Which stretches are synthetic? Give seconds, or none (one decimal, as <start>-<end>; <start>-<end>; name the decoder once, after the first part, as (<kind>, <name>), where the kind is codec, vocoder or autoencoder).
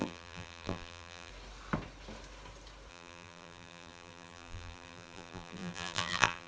0.0-1.3 (vocoder, BigVGAN v2); 2.9-6.5